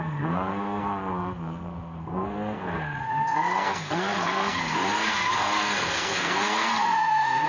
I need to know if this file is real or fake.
fake